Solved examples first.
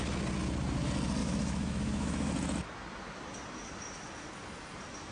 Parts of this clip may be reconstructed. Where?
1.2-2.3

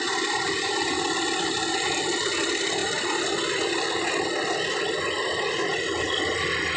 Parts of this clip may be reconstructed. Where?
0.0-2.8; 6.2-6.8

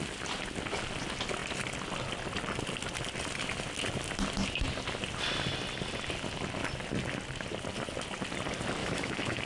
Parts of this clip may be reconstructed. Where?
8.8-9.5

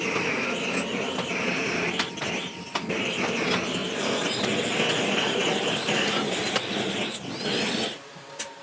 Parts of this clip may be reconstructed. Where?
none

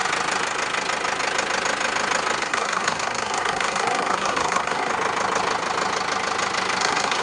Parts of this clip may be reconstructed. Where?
2.4-4.9; 6.8-7.2